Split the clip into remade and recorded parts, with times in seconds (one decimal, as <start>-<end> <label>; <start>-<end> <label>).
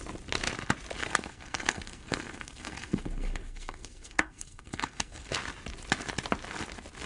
0.0-1.0 recorded; 1.0-5.3 remade; 5.3-7.1 recorded